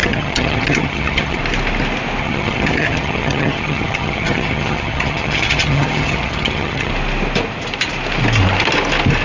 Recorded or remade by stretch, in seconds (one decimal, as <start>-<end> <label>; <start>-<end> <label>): 0.0-1.4 remade; 1.4-2.2 recorded; 2.2-6.9 remade; 6.9-9.2 recorded